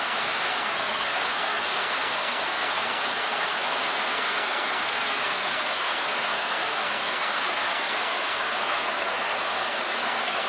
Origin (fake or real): fake